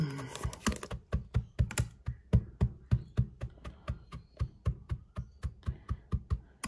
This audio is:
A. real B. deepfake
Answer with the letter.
A